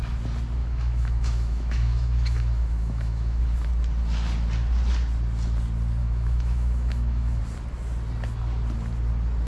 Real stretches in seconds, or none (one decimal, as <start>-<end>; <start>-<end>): 0.0-0.6; 3.4-6.0; 7.4-9.5